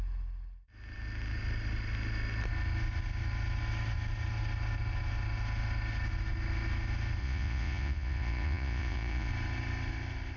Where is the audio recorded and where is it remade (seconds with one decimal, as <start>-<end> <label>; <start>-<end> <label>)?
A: 0.0-7.2 recorded; 7.2-9.3 remade; 9.3-10.4 recorded